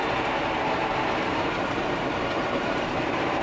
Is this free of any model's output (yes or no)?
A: no